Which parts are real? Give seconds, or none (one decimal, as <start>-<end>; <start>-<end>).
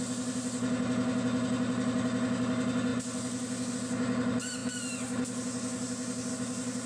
0.0-6.9